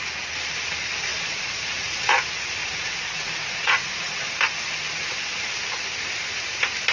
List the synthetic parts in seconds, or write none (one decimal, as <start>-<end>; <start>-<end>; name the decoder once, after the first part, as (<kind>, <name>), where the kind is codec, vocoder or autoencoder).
1.1-2.1 (vocoder, Vocos); 2.6-4.2